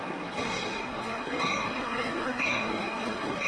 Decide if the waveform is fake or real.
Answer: fake